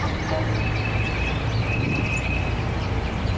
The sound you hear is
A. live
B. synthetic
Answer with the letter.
B